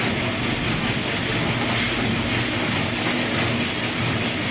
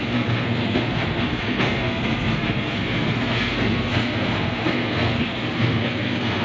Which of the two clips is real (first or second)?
first